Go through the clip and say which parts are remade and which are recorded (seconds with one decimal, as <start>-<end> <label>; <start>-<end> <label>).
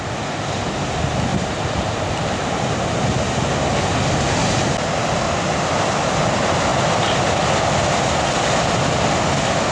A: 0.0-1.3 recorded; 1.3-2.8 remade; 2.8-9.7 recorded